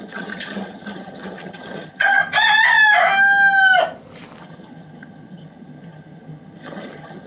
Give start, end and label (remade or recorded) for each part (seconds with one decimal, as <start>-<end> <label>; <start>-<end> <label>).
0.0-2.2 remade; 2.2-4.4 recorded; 4.4-7.3 remade